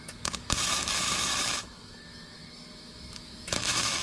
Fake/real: fake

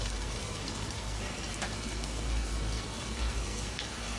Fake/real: fake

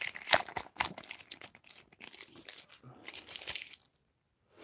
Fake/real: real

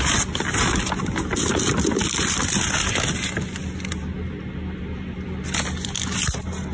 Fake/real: real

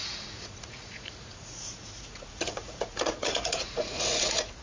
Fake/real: fake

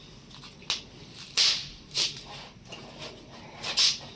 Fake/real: real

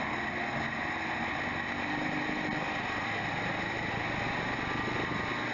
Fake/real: real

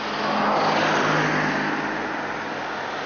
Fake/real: real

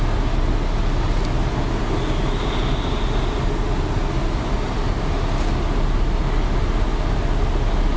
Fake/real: real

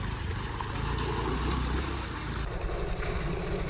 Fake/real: real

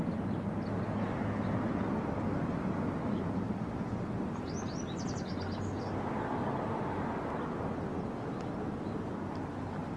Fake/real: real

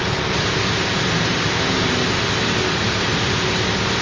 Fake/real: real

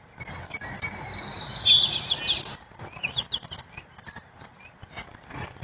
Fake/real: real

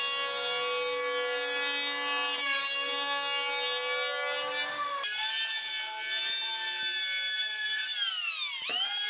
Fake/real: real